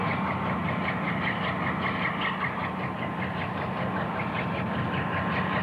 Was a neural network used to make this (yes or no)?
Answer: no